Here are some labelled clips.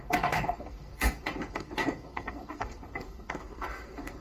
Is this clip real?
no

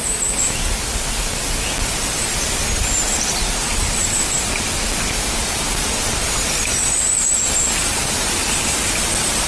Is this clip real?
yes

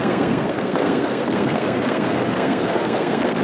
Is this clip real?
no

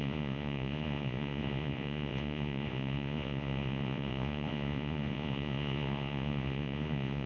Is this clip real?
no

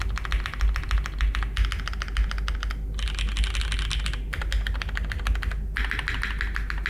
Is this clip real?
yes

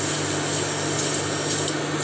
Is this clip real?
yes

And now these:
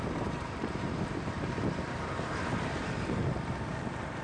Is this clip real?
no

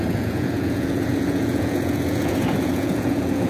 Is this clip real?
no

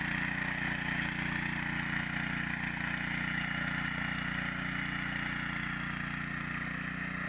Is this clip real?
yes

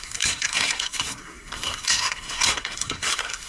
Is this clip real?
no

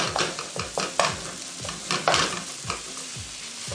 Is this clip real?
yes